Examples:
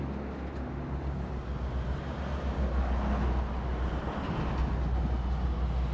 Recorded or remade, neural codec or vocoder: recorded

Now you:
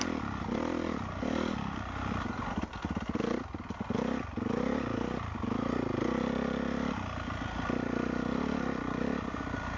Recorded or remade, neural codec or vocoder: recorded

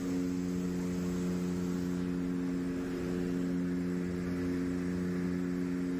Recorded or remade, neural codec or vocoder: recorded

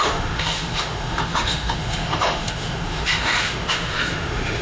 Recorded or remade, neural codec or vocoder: remade, autoencoder, DAC-VAE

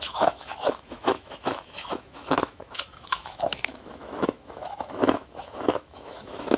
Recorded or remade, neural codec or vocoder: remade, autoencoder, DAC-VAE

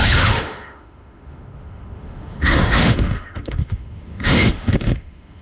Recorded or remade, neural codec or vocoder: remade, autoencoder, DAC-VAE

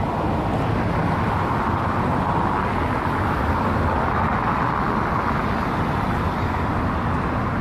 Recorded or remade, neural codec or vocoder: recorded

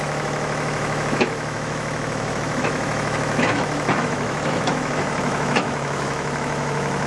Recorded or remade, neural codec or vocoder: remade, autoencoder, DAC-VAE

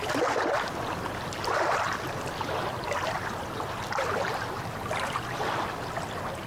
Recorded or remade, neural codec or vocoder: recorded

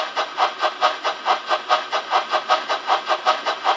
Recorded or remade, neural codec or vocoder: recorded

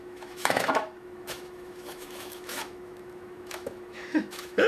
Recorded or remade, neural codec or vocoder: remade, autoencoder, DAC-VAE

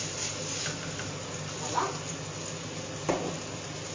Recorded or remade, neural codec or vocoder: recorded